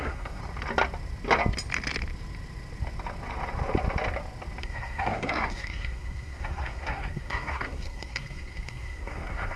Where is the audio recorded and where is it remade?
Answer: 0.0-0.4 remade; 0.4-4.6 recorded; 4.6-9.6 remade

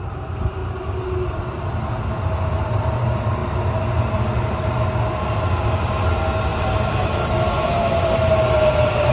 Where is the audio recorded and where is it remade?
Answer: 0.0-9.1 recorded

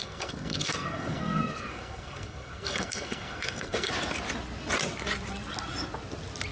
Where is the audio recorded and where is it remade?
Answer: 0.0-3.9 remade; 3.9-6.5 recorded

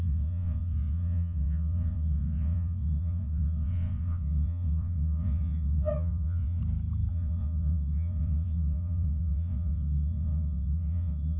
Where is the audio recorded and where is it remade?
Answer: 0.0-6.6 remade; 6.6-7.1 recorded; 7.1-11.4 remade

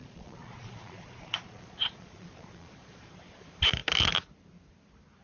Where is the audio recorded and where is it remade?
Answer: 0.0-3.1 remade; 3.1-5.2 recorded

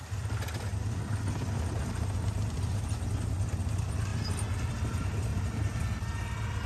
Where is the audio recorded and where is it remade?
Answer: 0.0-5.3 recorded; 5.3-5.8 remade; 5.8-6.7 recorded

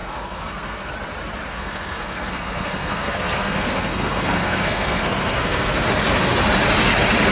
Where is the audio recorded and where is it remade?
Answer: 0.0-0.9 remade; 0.9-1.5 recorded; 1.5-5.7 remade; 5.7-7.3 recorded